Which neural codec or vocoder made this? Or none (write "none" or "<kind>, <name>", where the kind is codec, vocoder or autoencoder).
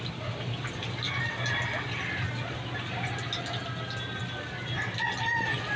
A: none